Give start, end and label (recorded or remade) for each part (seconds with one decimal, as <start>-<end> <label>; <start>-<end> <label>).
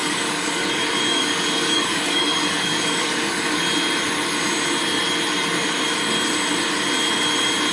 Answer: 0.0-3.6 remade; 3.6-7.7 recorded